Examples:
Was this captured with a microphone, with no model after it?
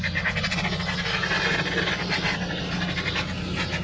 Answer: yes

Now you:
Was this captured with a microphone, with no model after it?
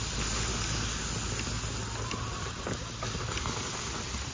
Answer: yes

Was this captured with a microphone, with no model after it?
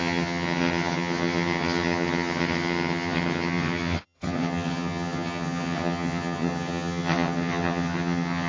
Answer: no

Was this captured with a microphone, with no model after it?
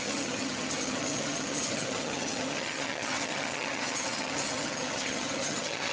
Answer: no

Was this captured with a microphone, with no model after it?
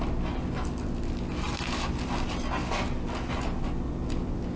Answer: yes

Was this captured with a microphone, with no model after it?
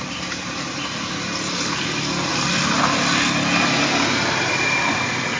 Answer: yes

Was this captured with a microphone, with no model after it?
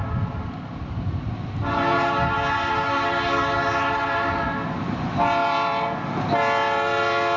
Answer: yes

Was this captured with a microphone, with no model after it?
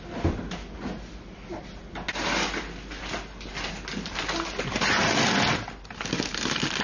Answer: yes